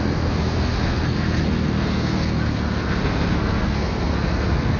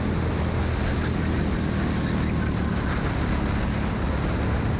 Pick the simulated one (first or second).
first